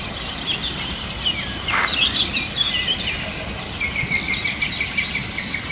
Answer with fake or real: real